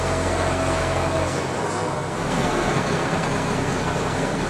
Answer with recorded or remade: remade